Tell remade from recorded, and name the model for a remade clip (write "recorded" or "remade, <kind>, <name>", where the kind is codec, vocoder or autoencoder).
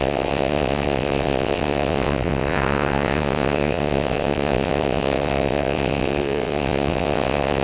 remade, vocoder, WaveNeXt